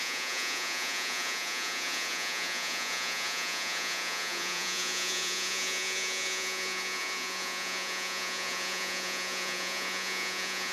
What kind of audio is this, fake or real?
fake